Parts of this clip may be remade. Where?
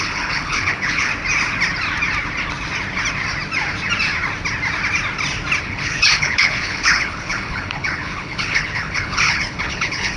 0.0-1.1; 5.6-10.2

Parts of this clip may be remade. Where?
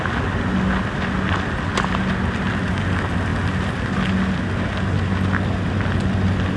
none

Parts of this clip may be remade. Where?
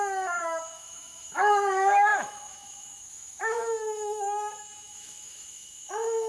0.0-6.3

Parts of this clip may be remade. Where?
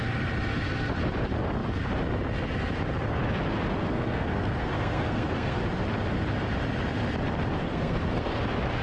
3.8-5.6; 7.6-8.4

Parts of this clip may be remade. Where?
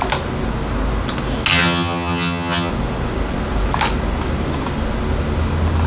1.5-2.7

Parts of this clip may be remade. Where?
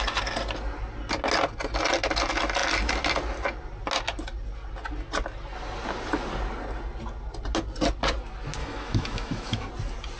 8.6-9.7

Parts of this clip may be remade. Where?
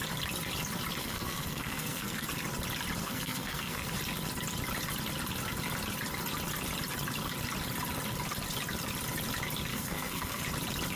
1.0-2.3; 3.0-4.0; 9.7-10.4